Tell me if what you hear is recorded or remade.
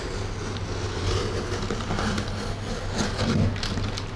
recorded